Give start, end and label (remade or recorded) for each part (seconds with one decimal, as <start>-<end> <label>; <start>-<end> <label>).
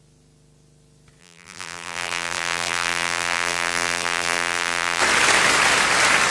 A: 0.0-1.2 recorded; 1.2-5.0 remade; 5.0-6.3 recorded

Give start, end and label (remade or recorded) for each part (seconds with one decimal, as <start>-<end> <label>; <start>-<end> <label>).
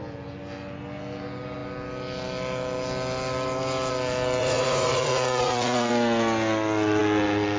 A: 0.0-4.4 recorded; 4.4-5.9 remade; 5.9-7.6 recorded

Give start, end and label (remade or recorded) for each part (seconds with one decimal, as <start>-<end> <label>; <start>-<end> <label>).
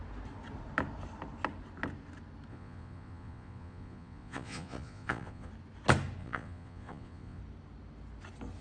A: 0.0-2.5 recorded; 2.5-5.5 remade; 5.5-6.2 recorded; 6.2-7.4 remade; 7.4-8.6 recorded